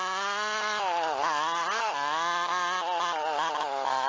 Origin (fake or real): real